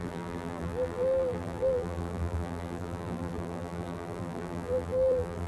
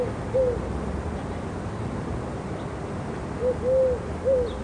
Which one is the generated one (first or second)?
first